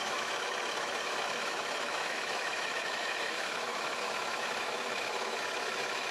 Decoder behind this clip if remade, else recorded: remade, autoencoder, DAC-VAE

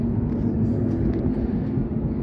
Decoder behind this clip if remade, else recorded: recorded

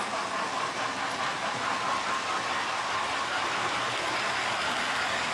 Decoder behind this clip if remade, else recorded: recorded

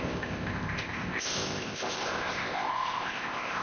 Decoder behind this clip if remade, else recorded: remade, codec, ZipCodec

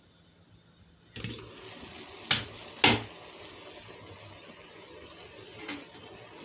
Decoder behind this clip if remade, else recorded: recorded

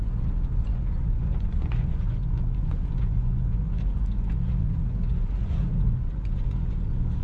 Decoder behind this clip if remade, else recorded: remade, vocoder, Vocos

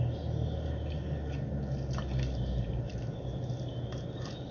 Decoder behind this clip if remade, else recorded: recorded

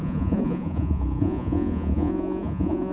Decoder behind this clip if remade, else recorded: remade, vocoder, Vocos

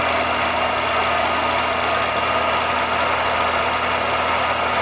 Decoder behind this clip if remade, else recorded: recorded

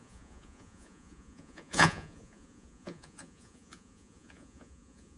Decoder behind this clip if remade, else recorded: remade, vocoder, Vocos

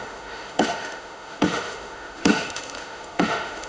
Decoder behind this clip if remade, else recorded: remade, autoencoder, DAC-VAE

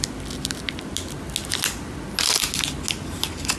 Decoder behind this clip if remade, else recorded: recorded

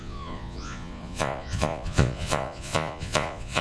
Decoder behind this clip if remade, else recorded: remade, vocoder, Vocos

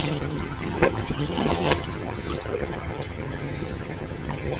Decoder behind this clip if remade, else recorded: remade, vocoder, HiFi-GAN